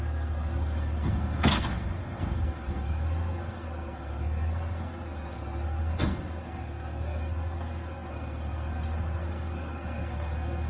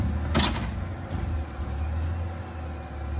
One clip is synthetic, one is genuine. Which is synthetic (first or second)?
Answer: first